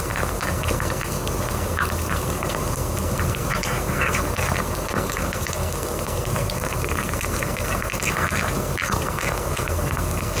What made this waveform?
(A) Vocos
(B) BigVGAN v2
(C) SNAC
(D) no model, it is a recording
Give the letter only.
C